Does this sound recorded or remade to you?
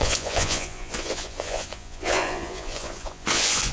remade